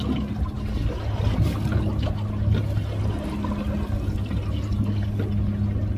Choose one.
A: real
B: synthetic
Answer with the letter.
A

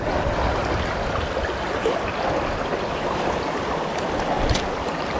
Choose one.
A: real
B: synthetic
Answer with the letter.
A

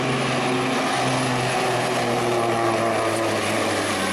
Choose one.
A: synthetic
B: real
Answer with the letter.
B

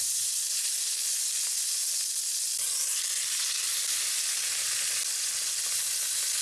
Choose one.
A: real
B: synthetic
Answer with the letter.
A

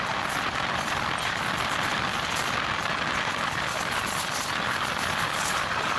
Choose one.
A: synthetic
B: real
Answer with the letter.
B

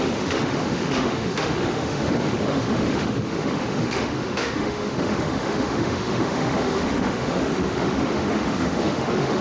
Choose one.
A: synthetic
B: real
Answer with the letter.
A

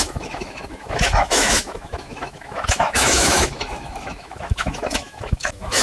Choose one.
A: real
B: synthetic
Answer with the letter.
B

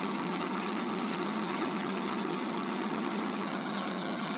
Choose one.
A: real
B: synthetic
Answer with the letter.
B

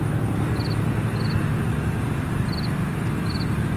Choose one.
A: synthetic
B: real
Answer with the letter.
B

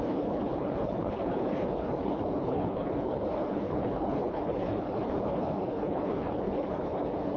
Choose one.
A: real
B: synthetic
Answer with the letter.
B